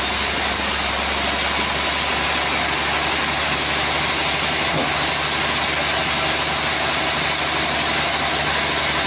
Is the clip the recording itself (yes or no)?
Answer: yes